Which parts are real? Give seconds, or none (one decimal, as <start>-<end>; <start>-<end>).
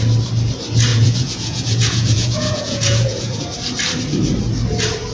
0.0-0.9; 3.4-5.1